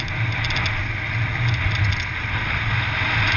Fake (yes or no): no